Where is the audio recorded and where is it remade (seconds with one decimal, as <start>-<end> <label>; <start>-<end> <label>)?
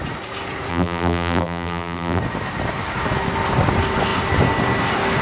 0.0-0.7 recorded; 0.7-2.2 remade; 2.2-5.2 recorded